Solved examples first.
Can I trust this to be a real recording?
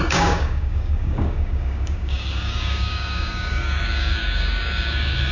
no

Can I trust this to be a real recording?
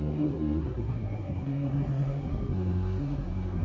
no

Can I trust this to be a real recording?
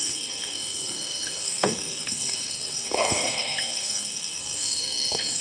no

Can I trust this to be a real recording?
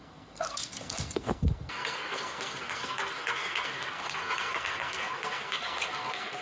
no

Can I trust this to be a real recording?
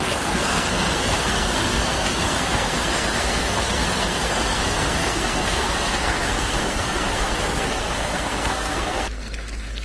no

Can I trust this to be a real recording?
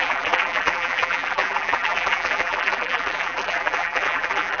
no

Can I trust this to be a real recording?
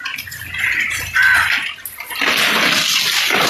yes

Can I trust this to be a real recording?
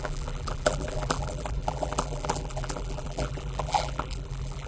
no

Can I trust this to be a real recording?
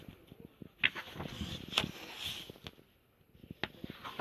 yes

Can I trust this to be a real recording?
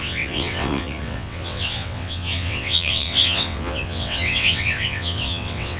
no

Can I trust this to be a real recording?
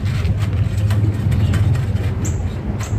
yes